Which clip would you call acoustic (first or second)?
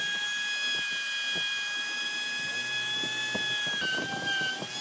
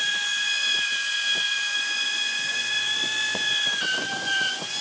first